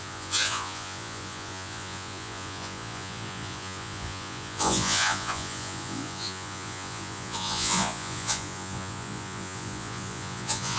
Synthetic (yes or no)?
yes